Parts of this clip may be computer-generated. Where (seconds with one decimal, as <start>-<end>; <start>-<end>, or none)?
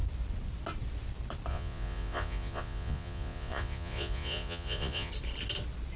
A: 1.5-5.1